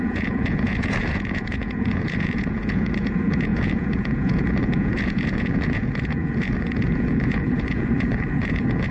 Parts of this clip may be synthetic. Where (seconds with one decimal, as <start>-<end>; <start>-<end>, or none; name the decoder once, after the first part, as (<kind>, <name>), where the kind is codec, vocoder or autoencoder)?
0.0-8.9 (vocoder, Vocos)